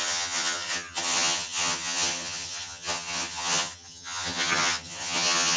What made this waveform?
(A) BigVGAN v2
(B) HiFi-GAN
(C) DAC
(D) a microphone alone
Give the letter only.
B